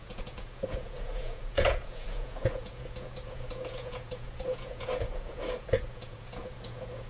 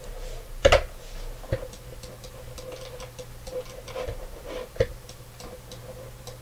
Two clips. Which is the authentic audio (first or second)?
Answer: second